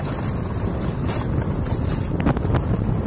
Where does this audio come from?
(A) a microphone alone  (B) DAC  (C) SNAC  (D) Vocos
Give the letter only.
A